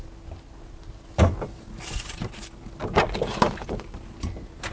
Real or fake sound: real